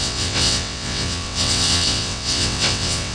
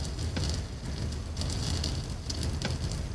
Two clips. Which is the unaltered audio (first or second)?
second